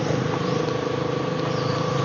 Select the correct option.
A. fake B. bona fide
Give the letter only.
B